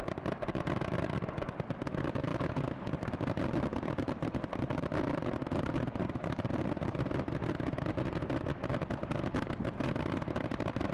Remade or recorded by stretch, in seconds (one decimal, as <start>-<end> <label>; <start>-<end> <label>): 0.0-5.4 recorded; 5.4-6.9 remade; 6.9-8.7 recorded; 8.7-10.9 remade